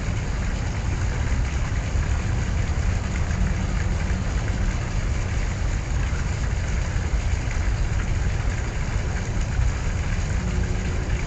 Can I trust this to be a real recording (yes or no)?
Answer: yes